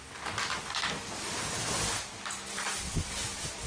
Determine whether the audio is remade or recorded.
recorded